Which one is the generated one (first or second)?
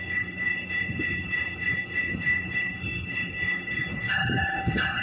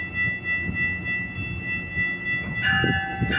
first